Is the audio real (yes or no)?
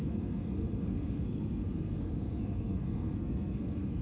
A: no